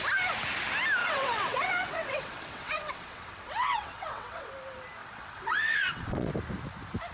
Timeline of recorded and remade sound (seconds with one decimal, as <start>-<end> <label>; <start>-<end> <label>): 0.0-1.0 recorded; 1.0-4.5 remade; 4.5-5.0 recorded; 5.0-6.3 remade; 6.3-7.1 recorded